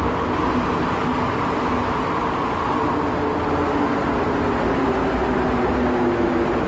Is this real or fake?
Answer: real